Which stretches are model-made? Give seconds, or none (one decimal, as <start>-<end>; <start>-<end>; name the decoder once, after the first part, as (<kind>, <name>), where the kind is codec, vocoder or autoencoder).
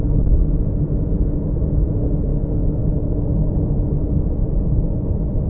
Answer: 2.3-2.9 (autoencoder, DAC-VAE); 4.4-5.5